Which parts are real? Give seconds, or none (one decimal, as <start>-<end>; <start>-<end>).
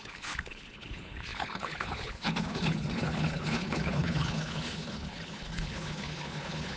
none